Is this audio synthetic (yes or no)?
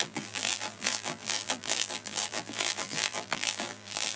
yes